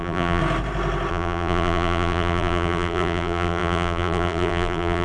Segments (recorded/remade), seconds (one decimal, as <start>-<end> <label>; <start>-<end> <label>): 0.0-0.4 remade; 0.4-1.1 recorded; 1.1-5.0 remade